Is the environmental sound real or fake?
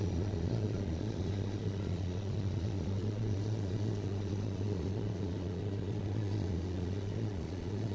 fake